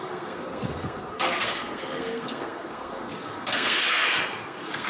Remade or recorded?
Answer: remade